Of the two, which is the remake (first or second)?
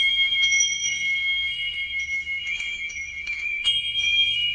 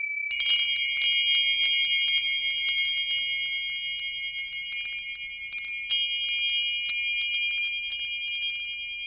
first